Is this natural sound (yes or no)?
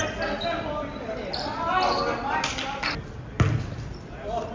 yes